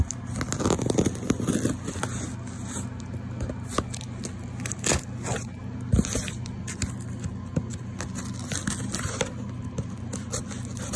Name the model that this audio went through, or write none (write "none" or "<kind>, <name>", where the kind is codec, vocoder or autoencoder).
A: none